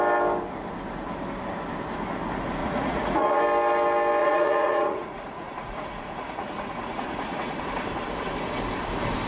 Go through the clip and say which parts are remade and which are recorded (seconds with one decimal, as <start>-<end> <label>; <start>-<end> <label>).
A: 0.0-2.6 recorded; 2.6-3.4 remade; 3.4-4.2 recorded; 4.2-7.6 remade; 7.6-9.3 recorded